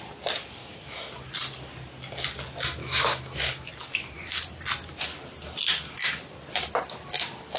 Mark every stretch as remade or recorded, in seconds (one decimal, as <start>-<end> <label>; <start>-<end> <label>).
0.0-0.6 recorded; 0.6-1.1 remade; 1.1-2.8 recorded; 2.8-3.7 remade; 3.7-7.6 recorded

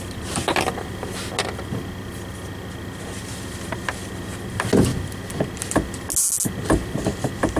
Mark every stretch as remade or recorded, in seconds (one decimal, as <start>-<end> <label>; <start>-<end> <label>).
0.0-7.6 recorded

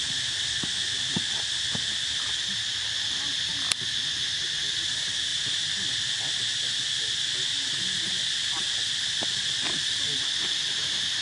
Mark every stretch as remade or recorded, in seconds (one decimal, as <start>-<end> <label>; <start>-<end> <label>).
0.0-11.2 recorded

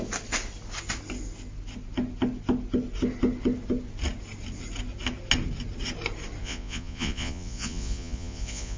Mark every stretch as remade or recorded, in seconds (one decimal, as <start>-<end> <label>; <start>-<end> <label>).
0.0-6.4 recorded; 6.4-8.8 remade

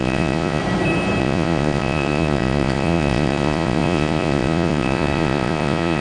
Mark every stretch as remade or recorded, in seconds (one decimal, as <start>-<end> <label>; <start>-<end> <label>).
0.0-0.6 remade; 0.6-1.2 recorded; 1.2-6.0 remade

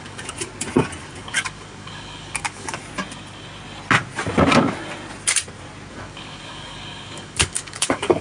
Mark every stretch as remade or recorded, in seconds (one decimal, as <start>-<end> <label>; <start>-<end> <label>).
0.0-0.5 remade; 0.5-1.0 recorded; 1.0-2.8 remade; 2.8-5.9 recorded; 5.9-8.2 remade

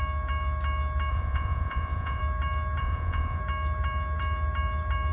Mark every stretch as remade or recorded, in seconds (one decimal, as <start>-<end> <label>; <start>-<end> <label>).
0.0-1.1 recorded; 1.1-2.2 remade; 2.2-2.8 recorded; 2.8-3.4 remade; 3.4-5.1 recorded

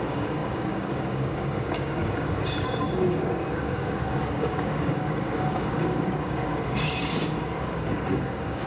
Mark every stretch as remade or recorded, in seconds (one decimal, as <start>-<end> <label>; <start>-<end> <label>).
0.0-8.7 remade